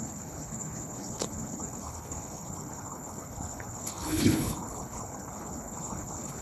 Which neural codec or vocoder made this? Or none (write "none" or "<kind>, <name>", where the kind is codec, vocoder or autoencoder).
codec, HILCodec